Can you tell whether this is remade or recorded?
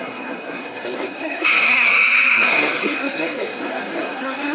remade